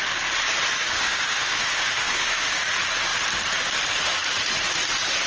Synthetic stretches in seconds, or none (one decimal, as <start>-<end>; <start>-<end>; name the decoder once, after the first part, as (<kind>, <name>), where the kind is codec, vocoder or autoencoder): 0.8-2.7 (codec, DAC)